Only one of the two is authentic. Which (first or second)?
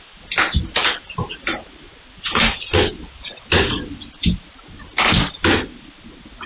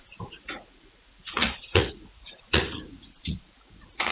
first